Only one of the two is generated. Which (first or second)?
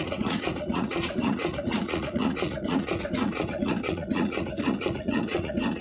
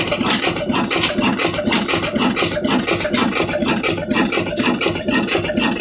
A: first